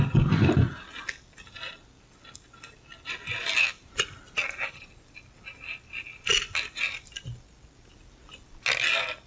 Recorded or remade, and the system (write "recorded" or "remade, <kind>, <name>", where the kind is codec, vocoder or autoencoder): recorded